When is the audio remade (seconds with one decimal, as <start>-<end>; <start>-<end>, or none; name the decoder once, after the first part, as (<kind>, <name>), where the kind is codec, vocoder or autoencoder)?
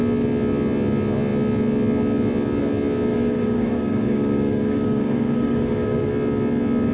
3.1-6.1 (codec, DAC)